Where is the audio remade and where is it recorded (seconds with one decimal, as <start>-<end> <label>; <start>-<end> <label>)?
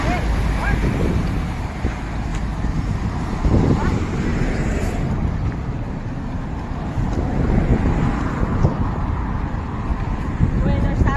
0.0-11.2 recorded